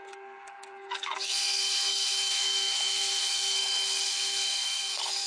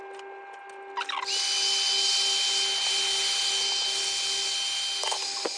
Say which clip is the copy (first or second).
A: first